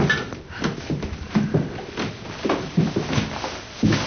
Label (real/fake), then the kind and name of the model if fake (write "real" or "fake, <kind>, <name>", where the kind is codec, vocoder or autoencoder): real